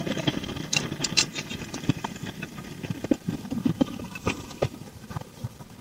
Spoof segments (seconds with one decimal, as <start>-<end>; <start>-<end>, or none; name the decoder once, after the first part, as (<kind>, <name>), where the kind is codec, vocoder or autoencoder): 0.0-5.8 (vocoder, BigVGAN v2)